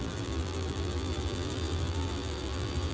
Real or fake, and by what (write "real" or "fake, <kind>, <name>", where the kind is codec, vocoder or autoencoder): fake, vocoder, BigVGAN v2